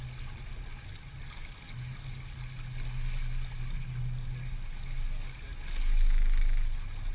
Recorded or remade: recorded